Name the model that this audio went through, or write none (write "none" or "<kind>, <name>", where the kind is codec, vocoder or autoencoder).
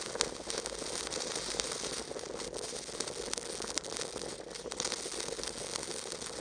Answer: none